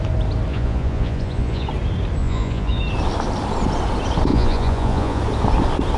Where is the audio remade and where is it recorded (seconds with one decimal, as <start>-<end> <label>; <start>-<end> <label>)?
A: 0.0-0.5 recorded; 0.5-1.7 remade; 1.7-2.2 recorded; 2.2-2.8 remade; 2.8-4.3 recorded; 4.3-5.2 remade; 5.2-6.0 recorded